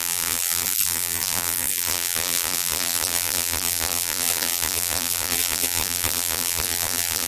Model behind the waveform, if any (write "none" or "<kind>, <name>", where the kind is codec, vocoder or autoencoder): vocoder, BigVGAN v2